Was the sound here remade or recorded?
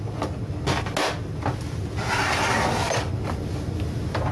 recorded